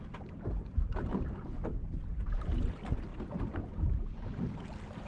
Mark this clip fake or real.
fake